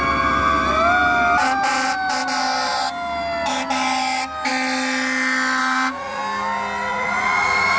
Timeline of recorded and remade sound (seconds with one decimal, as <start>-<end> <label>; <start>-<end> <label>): 0.0-5.6 recorded; 5.6-6.2 remade; 6.2-6.9 recorded; 6.9-7.8 remade